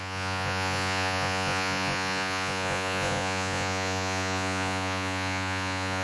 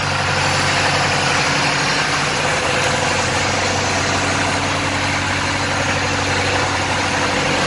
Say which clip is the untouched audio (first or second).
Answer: second